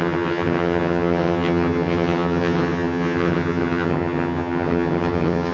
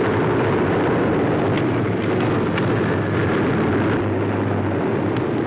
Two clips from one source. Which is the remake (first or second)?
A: first